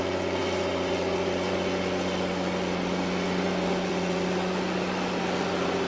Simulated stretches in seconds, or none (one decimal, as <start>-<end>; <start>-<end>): none